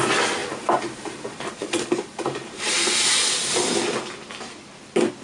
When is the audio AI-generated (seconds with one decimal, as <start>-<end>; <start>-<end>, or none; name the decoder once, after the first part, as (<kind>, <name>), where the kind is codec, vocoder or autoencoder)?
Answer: 0.4-2.7 (vocoder, BigVGAN v2)